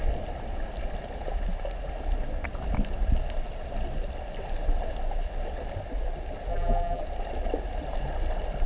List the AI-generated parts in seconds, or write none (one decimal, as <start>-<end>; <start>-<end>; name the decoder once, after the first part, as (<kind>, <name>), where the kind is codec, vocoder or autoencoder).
6.5-7.0 (vocoder, BigVGAN v2)